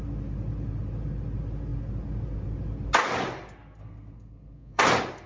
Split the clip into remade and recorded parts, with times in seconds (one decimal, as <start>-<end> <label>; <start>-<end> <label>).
0.0-3.8 recorded; 3.8-4.8 remade; 4.8-5.3 recorded